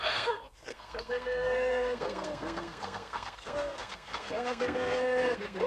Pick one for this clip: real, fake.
fake